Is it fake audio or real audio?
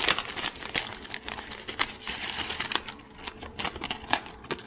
real